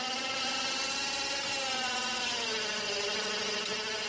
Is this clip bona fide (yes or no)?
yes